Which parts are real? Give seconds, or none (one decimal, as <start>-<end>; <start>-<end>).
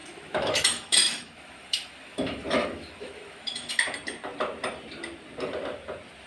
3.7-6.3